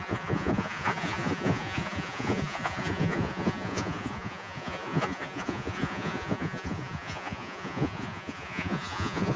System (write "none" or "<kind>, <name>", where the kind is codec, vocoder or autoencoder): vocoder, Vocos